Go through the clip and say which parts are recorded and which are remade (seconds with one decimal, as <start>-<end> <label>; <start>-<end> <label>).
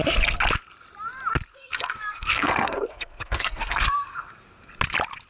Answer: 0.0-1.5 recorded; 1.5-4.3 remade; 4.3-5.3 recorded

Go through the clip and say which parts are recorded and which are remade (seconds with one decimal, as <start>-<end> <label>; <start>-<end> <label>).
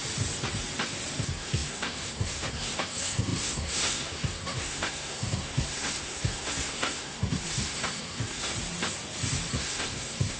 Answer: 0.0-1.2 recorded; 1.2-8.5 remade; 8.5-9.5 recorded; 9.5-10.4 remade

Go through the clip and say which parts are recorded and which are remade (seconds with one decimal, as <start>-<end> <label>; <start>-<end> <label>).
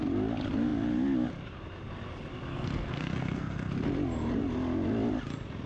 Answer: 0.0-2.5 recorded; 2.5-3.7 remade; 3.7-5.7 recorded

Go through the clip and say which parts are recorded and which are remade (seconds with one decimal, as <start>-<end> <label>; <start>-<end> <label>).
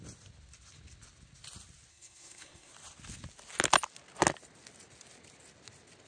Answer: 0.0-1.9 recorded; 1.9-2.7 remade; 2.7-6.1 recorded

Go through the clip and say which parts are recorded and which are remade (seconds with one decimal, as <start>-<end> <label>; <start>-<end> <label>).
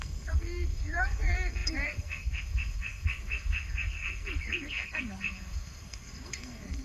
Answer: 0.0-6.8 remade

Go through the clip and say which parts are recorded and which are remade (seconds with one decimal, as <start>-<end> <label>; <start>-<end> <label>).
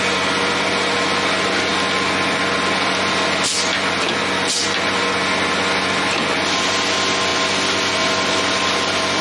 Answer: 0.0-9.2 recorded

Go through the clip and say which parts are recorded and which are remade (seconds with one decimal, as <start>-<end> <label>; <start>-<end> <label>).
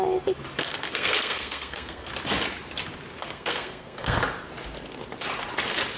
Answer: 0.0-0.6 recorded; 0.6-2.1 remade; 2.1-3.2 recorded; 3.2-4.2 remade; 4.2-6.0 recorded